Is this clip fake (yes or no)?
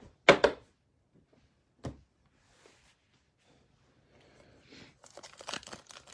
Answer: no